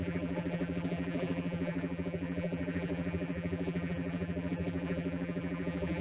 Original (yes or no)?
no